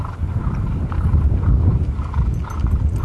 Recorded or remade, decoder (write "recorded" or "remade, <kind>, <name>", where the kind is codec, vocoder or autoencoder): recorded